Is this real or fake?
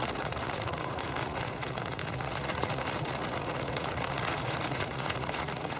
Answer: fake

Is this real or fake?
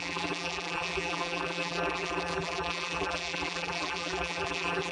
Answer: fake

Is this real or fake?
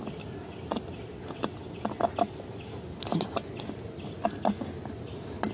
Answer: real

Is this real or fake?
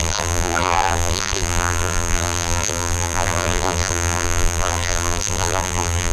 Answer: fake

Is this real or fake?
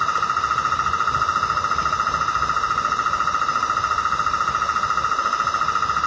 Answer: real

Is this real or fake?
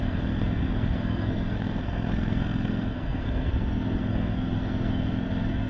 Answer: fake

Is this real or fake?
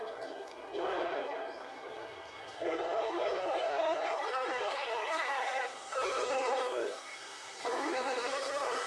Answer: fake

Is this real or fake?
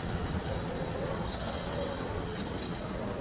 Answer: fake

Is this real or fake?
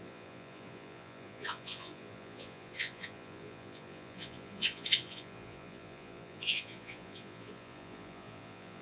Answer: fake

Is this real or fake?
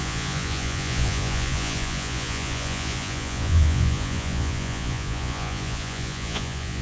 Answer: fake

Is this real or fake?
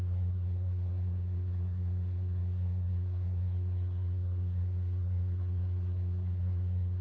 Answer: fake